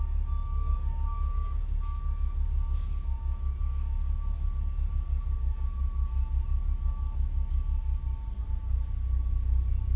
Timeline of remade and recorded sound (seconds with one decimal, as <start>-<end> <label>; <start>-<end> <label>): 0.0-0.4 recorded; 0.4-4.1 remade; 4.1-10.0 recorded

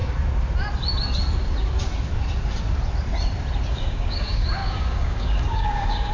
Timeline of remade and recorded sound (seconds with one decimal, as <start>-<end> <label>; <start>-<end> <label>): 0.0-3.7 recorded; 3.7-6.1 remade

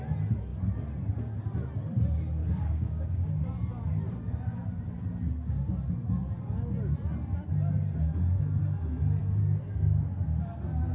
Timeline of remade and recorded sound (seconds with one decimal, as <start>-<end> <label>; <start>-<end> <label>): 0.0-2.4 recorded; 2.4-3.3 remade; 3.3-10.9 recorded

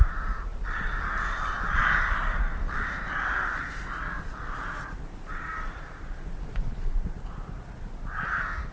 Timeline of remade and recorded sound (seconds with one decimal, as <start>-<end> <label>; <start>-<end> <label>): 0.0-8.7 recorded

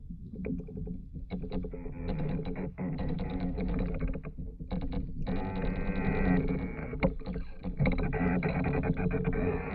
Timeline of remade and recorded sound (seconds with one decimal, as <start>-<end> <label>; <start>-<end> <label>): 0.0-4.1 remade; 4.1-6.8 recorded; 6.8-9.7 remade

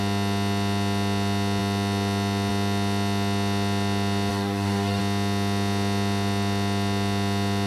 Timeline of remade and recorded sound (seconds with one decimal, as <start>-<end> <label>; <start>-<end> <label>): 0.0-4.3 recorded; 4.3-5.0 remade; 5.0-7.7 recorded